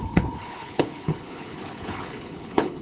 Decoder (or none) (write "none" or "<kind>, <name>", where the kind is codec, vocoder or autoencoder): codec, HILCodec